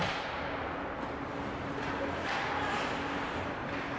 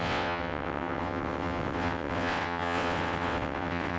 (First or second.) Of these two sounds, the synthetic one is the second